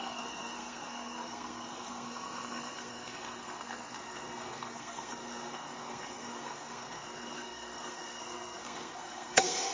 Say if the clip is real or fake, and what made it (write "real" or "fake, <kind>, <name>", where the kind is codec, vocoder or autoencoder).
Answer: fake, codec, SNAC